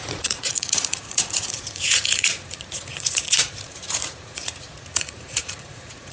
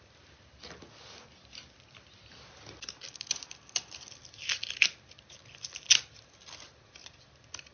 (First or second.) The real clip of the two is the second